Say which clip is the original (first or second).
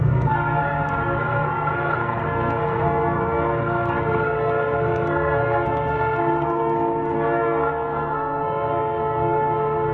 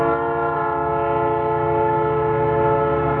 second